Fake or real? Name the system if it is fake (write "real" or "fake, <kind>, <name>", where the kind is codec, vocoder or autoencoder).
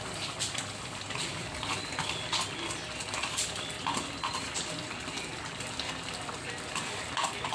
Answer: real